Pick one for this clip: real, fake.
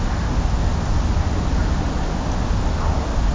real